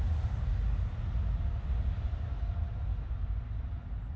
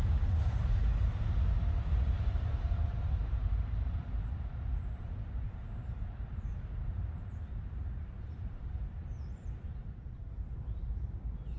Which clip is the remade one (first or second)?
second